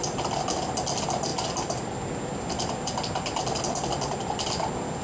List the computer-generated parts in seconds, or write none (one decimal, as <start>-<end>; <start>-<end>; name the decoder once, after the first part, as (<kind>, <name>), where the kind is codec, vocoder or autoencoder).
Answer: none